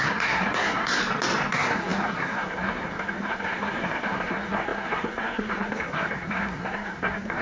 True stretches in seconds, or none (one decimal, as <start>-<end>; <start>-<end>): 1.0-1.5